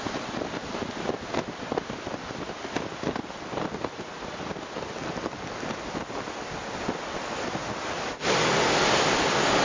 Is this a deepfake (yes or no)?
no